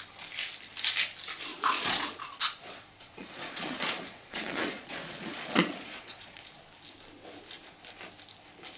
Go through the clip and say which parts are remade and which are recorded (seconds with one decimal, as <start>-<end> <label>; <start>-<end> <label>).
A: 0.0-1.5 recorded; 1.5-6.6 remade; 6.6-8.8 recorded